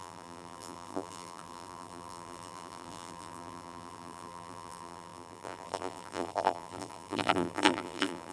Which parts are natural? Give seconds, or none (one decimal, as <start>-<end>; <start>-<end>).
none